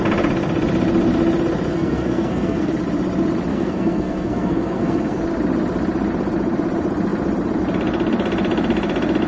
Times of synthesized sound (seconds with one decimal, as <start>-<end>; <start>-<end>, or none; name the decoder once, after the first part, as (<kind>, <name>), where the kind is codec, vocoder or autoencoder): 1.7-2.7 (codec, SNAC); 3.5-5.2